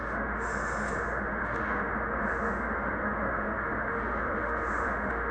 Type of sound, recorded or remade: remade